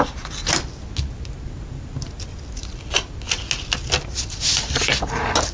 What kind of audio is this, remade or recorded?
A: recorded